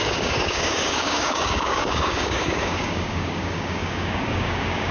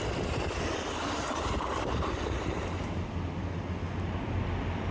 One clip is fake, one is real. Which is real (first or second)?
second